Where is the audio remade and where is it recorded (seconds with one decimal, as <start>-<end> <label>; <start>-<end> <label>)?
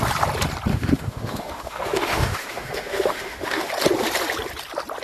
0.0-0.7 recorded; 0.7-3.7 remade; 3.7-5.0 recorded